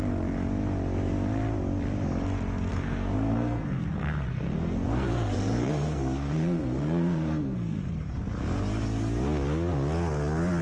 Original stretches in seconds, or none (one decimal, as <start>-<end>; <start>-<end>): 0.0-2.7; 7.9-10.6